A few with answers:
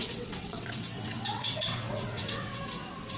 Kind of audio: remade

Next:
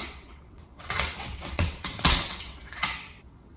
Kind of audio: remade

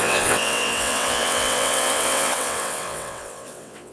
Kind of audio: remade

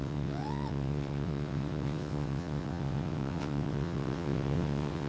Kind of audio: remade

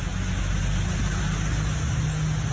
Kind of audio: recorded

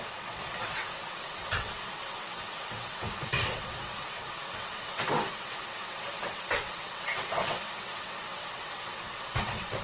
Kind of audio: remade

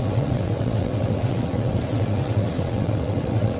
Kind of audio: remade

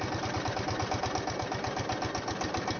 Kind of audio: recorded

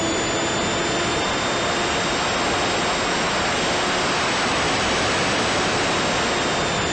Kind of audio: recorded